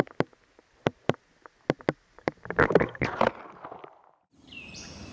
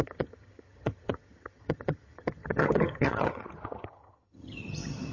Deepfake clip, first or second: second